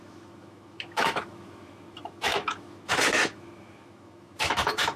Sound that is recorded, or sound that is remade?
remade